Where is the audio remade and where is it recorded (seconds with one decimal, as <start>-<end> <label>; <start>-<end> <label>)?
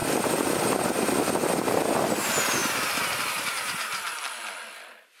0.0-1.6 remade; 1.6-2.6 recorded; 2.6-4.0 remade; 4.0-5.2 recorded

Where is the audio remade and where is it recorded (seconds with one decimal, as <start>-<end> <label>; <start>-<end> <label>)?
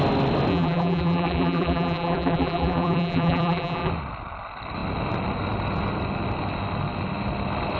0.0-0.5 recorded; 0.5-3.9 remade; 3.9-7.8 recorded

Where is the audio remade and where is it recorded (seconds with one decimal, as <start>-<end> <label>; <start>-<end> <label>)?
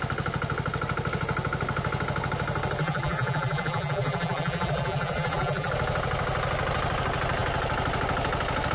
0.0-2.8 recorded; 2.8-5.7 remade; 5.7-8.7 recorded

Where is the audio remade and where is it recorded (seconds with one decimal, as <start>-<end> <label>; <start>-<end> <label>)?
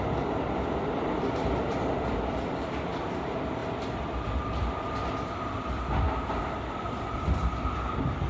0.0-3.6 remade; 3.6-6.4 recorded; 6.4-8.3 remade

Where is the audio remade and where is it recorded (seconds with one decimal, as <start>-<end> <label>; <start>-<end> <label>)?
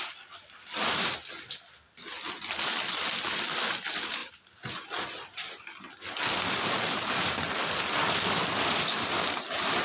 0.0-4.2 remade; 4.2-5.5 recorded; 5.5-9.8 remade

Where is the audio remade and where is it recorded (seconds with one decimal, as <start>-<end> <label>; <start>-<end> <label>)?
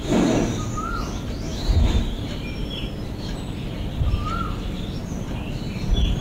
0.0-1.5 recorded; 1.5-3.4 remade; 3.4-5.0 recorded; 5.0-5.5 remade; 5.5-6.2 recorded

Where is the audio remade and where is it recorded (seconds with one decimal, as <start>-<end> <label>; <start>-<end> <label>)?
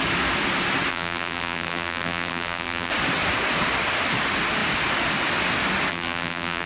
0.0-0.9 recorded; 0.9-2.9 remade; 2.9-5.9 recorded; 5.9-6.7 remade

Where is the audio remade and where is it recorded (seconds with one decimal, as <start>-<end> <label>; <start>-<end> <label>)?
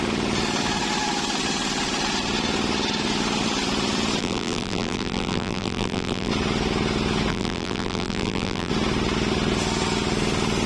0.0-4.2 recorded; 4.2-6.3 remade; 6.3-7.3 recorded; 7.3-8.7 remade; 8.7-10.7 recorded